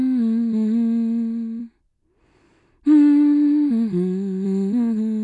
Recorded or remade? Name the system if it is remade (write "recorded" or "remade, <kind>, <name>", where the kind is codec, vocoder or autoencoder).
recorded